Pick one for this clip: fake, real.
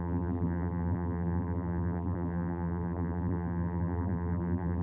fake